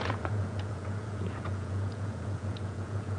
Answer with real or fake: fake